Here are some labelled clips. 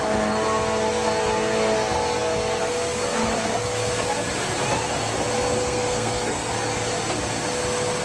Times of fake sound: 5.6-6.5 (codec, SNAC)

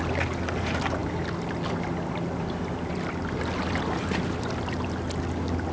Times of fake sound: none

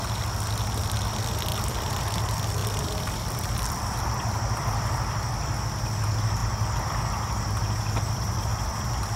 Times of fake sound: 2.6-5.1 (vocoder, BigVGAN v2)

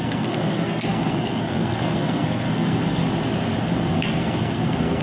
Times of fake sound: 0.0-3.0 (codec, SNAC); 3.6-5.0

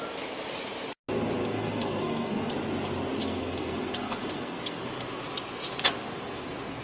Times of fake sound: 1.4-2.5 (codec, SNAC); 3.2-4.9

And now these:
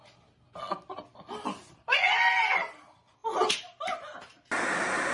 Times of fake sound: none

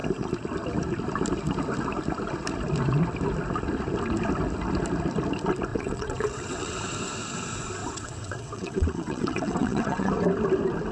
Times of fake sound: 5.7-6.8 (vocoder, WaveNeXt); 7.8-10.1

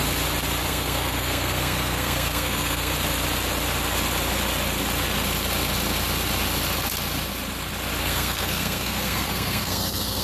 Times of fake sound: 0.7-2.9 (codec, SNAC); 8.0-10.2